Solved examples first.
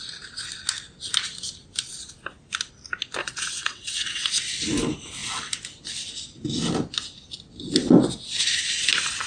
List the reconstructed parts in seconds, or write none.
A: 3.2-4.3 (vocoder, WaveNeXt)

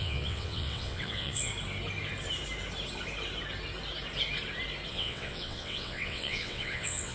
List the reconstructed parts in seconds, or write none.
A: 0.0-1.5 (vocoder, WaveNeXt); 4.9-7.1

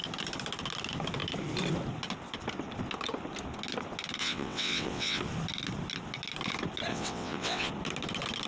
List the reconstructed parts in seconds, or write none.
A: 4.2-5.2 (vocoder, WaveNeXt); 6.9-7.7

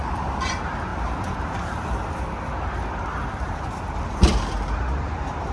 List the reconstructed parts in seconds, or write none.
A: none

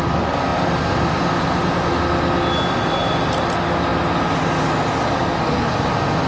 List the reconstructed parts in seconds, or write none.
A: none